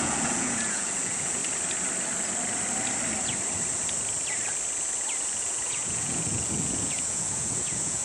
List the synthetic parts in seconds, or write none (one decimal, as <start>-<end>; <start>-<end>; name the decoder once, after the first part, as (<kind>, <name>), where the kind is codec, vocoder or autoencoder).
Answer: 0.0-1.4 (vocoder, Vocos); 5.4-8.0